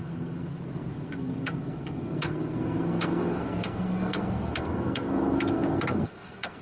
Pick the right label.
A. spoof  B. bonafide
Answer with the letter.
A